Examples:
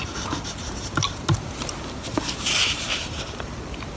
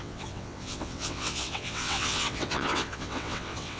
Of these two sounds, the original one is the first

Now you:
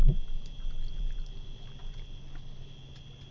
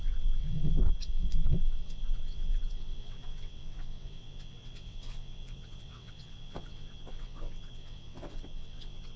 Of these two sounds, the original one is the first